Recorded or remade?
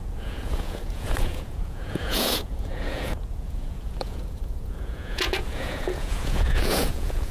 remade